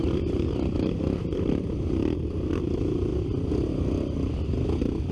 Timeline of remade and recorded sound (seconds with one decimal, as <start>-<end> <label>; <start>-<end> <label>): 0.0-3.1 remade; 3.1-5.1 recorded